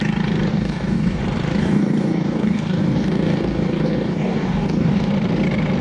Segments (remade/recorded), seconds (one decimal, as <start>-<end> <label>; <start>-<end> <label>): 0.0-0.5 recorded; 0.5-1.2 remade; 1.2-1.6 recorded; 1.6-5.1 remade; 5.1-5.8 recorded